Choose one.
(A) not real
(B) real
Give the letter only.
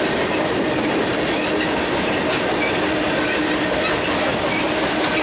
B